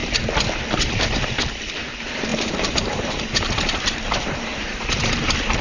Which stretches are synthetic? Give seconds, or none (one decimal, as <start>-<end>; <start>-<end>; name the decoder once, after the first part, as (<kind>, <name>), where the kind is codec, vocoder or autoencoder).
0.7-5.6 (vocoder, BigVGAN v2)